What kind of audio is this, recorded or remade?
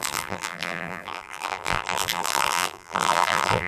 remade